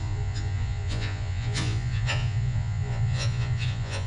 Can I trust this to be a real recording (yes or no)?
no